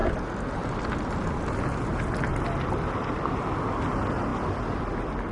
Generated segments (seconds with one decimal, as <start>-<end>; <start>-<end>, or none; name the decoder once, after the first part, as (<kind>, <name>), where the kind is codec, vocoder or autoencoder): none